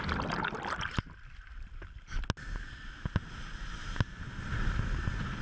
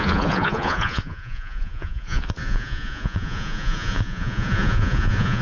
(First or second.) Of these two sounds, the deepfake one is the second